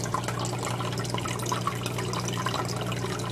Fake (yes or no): no